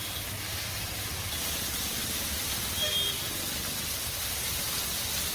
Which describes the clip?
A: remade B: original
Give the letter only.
B